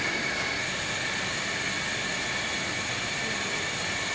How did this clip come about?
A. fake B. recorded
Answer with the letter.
B